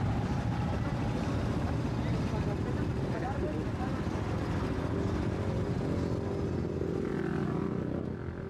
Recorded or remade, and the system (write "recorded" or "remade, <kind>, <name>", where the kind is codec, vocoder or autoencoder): recorded